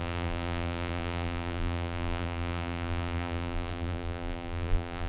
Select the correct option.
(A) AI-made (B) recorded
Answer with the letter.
A